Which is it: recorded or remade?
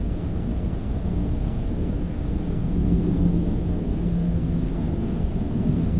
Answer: remade